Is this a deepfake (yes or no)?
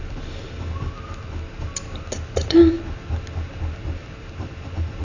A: no